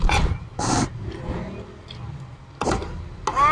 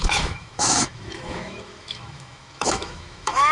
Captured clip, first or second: first